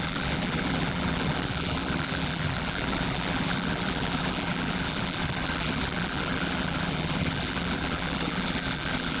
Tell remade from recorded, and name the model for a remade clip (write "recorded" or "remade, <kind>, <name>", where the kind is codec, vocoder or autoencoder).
remade, vocoder, BigVGAN v2